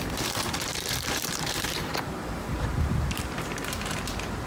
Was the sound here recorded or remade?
remade